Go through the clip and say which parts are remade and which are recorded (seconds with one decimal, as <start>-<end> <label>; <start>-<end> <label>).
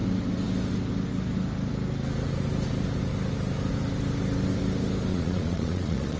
0.0-5.1 recorded; 5.1-6.2 remade